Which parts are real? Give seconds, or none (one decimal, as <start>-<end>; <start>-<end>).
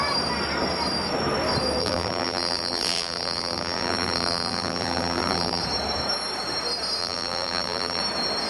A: 0.0-1.8; 5.6-7.0; 8.0-8.5